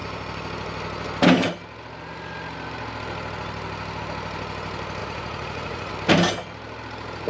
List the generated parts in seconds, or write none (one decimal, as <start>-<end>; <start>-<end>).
5.0-5.9